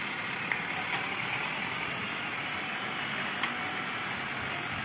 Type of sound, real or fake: real